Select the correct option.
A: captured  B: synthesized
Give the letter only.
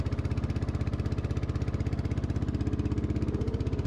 A